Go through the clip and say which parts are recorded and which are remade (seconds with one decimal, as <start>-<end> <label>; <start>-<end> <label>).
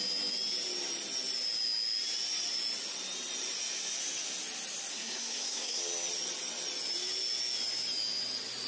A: 0.0-4.9 recorded; 4.9-5.8 remade; 5.8-8.7 recorded